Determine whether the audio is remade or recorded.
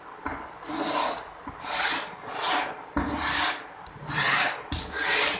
recorded